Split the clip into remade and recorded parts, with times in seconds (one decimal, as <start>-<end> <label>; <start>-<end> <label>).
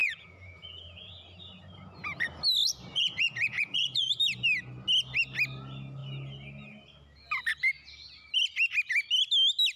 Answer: 0.0-1.1 remade; 1.1-2.9 recorded; 2.9-4.1 remade; 4.1-9.8 recorded